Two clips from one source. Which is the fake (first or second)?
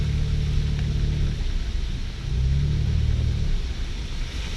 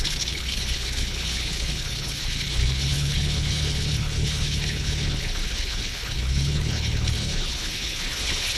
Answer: second